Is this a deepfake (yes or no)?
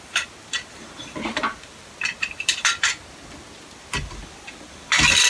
no